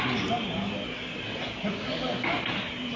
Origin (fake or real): real